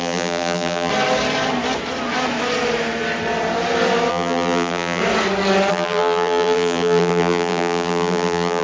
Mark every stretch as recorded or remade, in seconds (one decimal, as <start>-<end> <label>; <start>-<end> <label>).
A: 0.0-0.9 remade; 0.9-4.1 recorded; 4.1-5.0 remade; 5.0-5.7 recorded; 5.7-8.6 remade